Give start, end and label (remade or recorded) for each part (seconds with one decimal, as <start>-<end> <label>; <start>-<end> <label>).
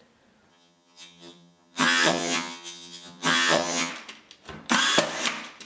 0.0-0.5 recorded; 0.5-3.9 remade; 3.9-5.7 recorded